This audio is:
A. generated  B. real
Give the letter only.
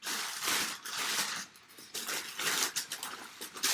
B